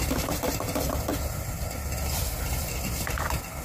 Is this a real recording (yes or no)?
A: no